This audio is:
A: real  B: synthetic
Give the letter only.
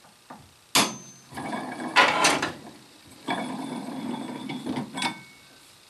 A